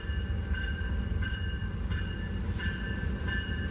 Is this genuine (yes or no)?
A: no